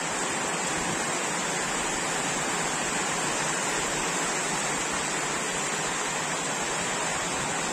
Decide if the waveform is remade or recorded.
recorded